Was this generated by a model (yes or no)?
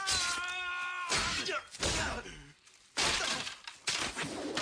no